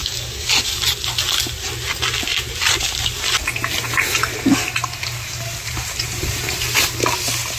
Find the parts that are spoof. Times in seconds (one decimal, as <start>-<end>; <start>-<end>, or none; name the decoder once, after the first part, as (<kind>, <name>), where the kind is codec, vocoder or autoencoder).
0.0-0.5 (codec, DAC)